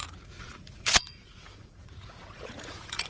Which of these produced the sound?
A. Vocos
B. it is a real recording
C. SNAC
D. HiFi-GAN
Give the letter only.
A